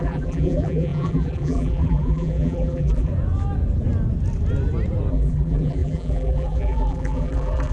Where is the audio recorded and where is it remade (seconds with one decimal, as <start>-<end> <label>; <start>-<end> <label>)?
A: 0.0-3.1 remade; 3.1-5.1 recorded; 5.1-7.7 remade